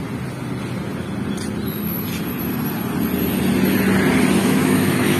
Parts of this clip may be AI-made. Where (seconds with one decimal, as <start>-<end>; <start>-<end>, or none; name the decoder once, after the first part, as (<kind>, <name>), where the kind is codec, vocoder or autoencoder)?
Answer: 4.4-5.2 (autoencoder, DAC-VAE)